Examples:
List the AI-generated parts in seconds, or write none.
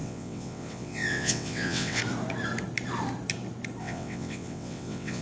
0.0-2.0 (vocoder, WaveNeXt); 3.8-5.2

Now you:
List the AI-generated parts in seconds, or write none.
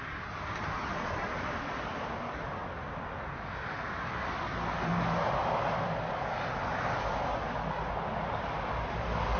none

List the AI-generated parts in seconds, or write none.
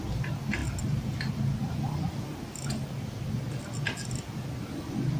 none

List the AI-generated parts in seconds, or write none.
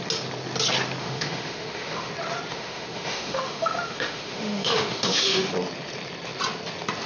1.0-2.1 (autoencoder, DAC-VAE); 2.5-5.5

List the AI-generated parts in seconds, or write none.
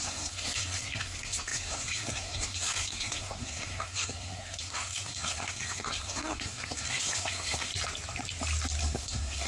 0.0-7.7 (codec, SNAC); 8.8-9.5